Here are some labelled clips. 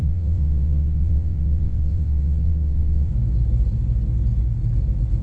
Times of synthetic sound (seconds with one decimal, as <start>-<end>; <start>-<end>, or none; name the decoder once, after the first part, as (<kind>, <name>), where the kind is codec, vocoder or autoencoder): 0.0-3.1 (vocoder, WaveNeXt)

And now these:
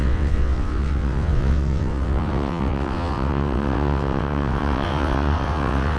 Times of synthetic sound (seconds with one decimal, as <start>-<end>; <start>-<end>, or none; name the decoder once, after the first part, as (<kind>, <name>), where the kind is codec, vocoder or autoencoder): 0.0-6.0 (vocoder, WaveNeXt)

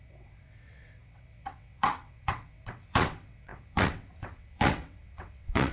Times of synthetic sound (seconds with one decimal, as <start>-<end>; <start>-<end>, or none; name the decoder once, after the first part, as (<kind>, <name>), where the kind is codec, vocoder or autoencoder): 0.0-5.7 (vocoder, WaveNeXt)

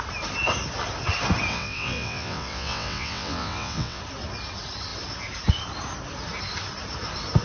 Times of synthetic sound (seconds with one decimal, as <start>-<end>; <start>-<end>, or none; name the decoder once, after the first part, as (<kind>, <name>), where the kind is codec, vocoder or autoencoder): 1.5-4.0 (vocoder, WaveNeXt)

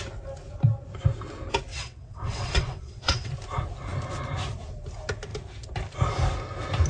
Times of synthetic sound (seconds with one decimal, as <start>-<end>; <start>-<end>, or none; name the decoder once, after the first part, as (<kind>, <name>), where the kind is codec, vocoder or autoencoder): 1.7-3.3 (vocoder, WaveNeXt)

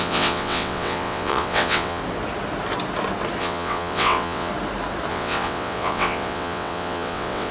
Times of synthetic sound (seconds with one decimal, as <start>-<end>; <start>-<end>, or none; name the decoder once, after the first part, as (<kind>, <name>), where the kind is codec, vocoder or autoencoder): 0.0-2.0 (vocoder, WaveNeXt); 3.4-4.5; 5.1-7.5